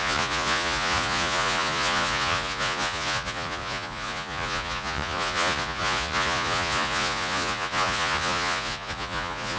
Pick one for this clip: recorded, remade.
remade